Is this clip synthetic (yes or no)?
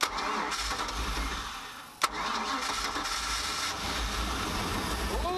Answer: no